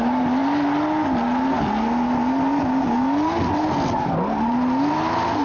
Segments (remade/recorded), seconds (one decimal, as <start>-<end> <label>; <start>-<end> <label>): 0.0-5.4 recorded